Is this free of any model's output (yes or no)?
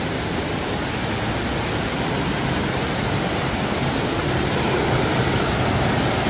yes